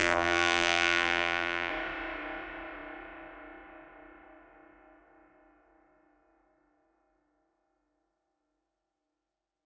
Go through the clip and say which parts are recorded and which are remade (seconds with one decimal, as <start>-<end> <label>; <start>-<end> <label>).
0.0-1.7 remade; 1.7-9.7 recorded